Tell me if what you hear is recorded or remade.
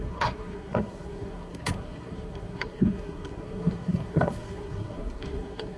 remade